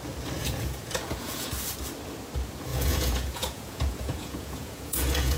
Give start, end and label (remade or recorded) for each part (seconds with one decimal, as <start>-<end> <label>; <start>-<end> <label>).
0.0-0.4 recorded; 0.4-1.5 remade; 1.5-2.7 recorded; 2.7-5.4 remade